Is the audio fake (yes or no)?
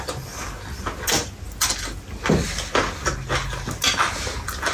no